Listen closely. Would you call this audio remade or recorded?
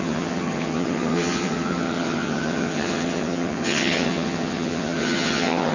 remade